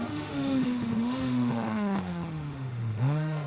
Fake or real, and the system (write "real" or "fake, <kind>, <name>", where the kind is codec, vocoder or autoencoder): fake, autoencoder, DAC-VAE